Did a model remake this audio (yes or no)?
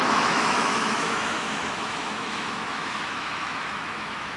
yes